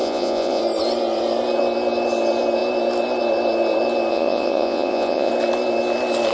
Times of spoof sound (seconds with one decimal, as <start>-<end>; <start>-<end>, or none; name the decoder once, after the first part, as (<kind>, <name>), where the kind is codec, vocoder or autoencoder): 0.0-0.6 (vocoder, Vocos); 4.1-5.3